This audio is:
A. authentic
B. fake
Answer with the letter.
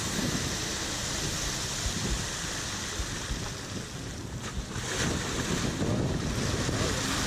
A